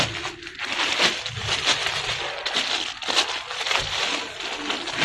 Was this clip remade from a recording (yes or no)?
no